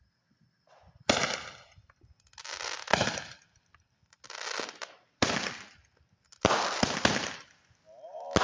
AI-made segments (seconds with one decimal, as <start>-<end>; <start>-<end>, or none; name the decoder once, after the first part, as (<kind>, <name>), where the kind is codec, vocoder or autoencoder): 2.9-7.1 (vocoder, BigVGAN v2)